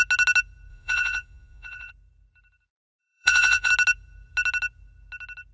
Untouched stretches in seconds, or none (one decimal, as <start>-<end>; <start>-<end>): 0.0-0.7; 1.9-3.0; 3.7-5.5